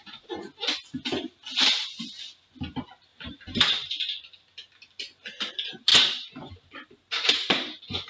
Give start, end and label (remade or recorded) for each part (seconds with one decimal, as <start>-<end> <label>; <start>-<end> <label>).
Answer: 0.0-3.1 recorded; 3.1-3.9 remade; 3.9-5.9 recorded; 5.9-8.1 remade